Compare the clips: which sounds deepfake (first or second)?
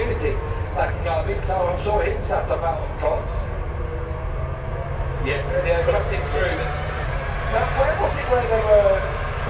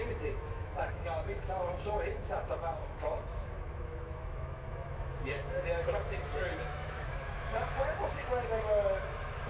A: second